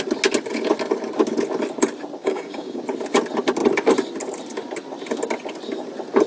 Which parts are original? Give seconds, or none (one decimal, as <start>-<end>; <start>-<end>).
0.0-2.2; 2.8-6.3